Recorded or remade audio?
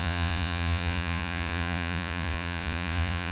remade